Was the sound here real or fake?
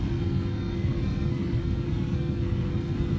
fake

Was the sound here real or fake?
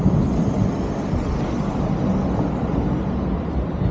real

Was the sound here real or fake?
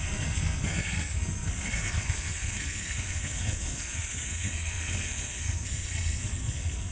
fake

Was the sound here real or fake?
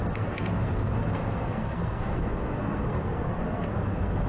fake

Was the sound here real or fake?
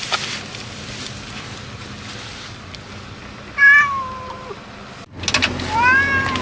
real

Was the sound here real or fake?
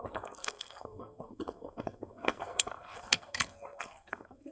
fake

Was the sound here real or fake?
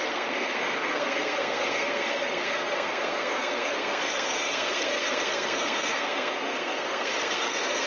fake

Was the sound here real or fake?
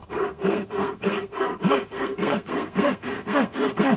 fake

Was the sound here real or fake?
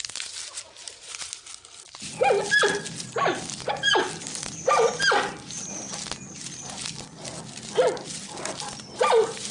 real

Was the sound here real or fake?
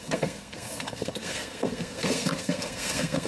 fake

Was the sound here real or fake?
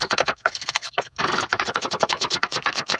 fake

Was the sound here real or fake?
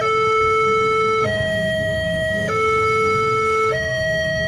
fake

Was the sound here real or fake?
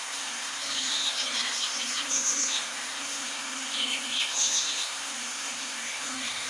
fake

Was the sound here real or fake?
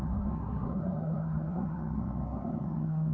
fake